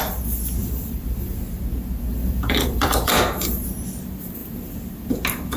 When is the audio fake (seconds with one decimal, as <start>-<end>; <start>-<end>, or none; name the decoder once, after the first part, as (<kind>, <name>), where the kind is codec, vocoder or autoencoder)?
0.6-1.6 (vocoder, BigVGAN v2); 2.1-3.1